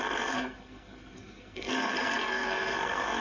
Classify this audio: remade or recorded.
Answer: remade